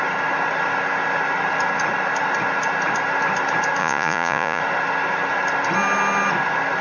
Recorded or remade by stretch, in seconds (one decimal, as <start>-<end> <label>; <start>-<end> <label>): 0.0-3.8 recorded; 3.8-4.6 remade; 4.6-6.8 recorded